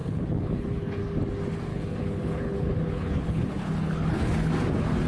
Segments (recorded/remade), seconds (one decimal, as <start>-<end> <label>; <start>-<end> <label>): 0.0-1.0 remade; 1.0-1.7 recorded; 1.7-4.5 remade; 4.5-5.1 recorded